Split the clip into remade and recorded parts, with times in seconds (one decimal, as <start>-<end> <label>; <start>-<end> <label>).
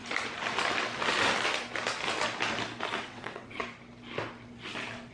0.0-3.0 recorded; 3.0-3.6 remade; 3.6-5.1 recorded